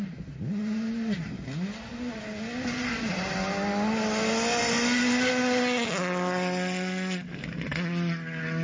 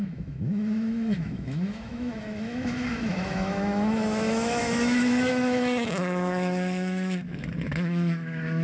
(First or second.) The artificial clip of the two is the second